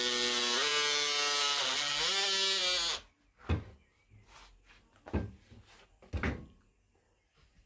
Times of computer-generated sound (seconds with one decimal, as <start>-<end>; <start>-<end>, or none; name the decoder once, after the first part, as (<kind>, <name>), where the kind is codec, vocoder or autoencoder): none